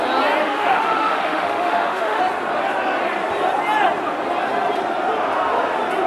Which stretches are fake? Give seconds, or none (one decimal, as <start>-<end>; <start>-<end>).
0.4-2.2